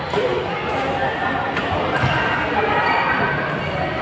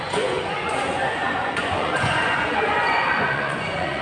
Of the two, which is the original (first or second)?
first